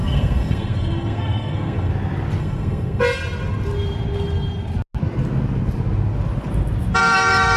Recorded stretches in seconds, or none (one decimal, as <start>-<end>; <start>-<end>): 1.9-2.4; 3.0-7.0